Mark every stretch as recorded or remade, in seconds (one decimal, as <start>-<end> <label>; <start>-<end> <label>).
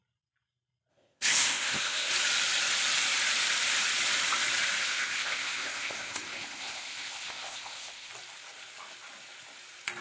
0.0-0.9 recorded; 0.9-2.1 remade; 2.1-4.8 recorded; 4.8-8.1 remade; 8.1-10.0 recorded